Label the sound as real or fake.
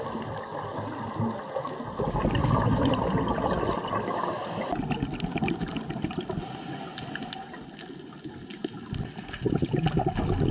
real